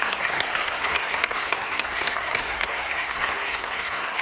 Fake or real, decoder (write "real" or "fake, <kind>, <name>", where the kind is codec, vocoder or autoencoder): fake, codec, SNAC